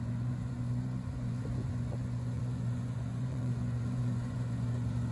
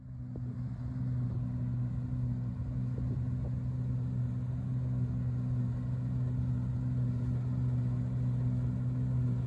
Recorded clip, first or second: second